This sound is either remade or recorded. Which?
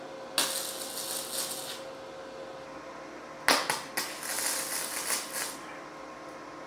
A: recorded